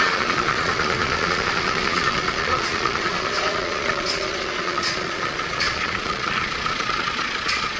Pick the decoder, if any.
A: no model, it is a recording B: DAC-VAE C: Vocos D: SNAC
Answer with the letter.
C